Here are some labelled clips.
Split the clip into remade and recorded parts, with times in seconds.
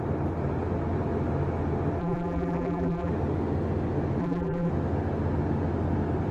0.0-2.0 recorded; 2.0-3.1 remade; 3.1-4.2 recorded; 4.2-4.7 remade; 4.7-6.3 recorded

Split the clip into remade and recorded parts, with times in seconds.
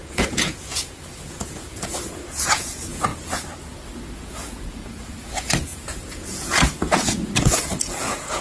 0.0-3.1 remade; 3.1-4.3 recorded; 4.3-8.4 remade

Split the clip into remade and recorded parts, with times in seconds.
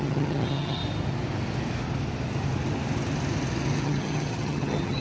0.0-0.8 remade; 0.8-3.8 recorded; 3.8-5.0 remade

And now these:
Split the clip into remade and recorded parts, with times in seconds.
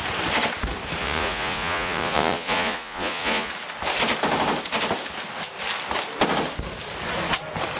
0.0-1.0 recorded; 1.0-3.5 remade; 3.5-7.8 recorded